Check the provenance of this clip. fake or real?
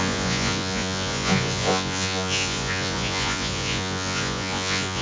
fake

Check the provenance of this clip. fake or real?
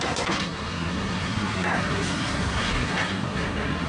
fake